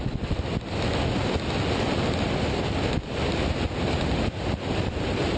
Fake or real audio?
real